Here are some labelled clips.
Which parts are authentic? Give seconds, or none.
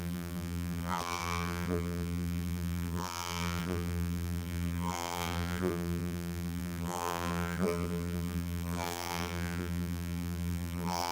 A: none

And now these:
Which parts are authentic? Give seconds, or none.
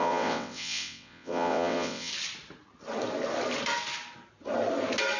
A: 2.1-5.2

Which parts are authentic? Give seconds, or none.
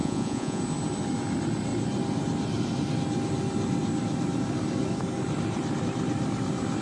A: 0.6-6.8